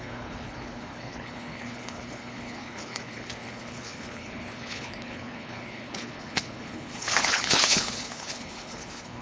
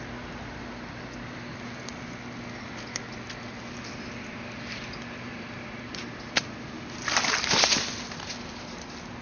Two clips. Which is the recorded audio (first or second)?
second